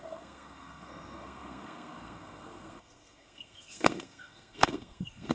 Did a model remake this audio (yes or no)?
yes